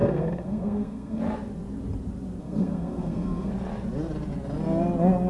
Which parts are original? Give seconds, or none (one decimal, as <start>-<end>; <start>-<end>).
1.2-2.4; 3.5-5.3